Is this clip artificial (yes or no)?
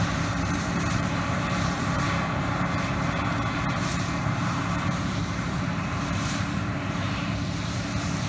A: yes